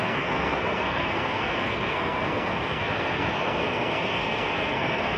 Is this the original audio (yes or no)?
no